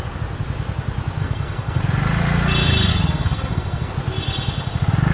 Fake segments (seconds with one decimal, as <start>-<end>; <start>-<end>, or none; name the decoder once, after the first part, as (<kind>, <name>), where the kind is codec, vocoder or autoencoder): 1.2-1.8 (codec, SNAC); 2.9-3.9